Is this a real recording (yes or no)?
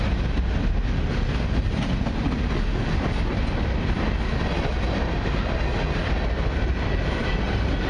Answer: yes